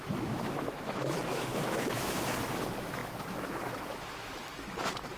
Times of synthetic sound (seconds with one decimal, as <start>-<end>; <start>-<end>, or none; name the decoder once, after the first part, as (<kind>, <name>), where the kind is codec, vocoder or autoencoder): 0.0-5.2 (autoencoder, DAC-VAE)